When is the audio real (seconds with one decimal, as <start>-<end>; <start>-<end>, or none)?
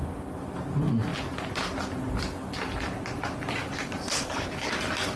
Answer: 0.0-4.1; 4.7-5.2